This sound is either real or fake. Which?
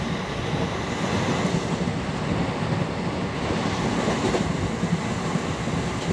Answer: real